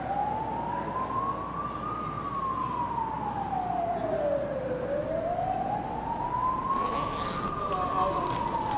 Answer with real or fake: real